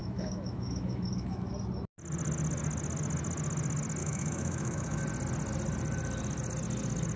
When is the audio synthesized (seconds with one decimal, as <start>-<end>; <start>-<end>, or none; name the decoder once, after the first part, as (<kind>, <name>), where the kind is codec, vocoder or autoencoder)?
0.0-1.5 (autoencoder, DAC-VAE); 4.0-5.0